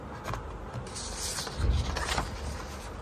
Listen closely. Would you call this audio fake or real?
real